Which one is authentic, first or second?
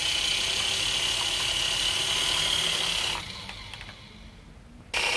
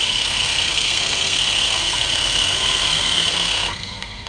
first